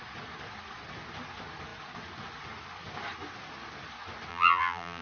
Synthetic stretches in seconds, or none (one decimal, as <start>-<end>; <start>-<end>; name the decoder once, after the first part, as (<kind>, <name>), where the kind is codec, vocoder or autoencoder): 4.3-5.0 (vocoder, BigVGAN v2)